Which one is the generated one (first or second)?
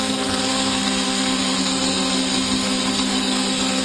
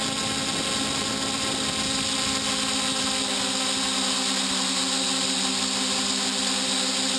first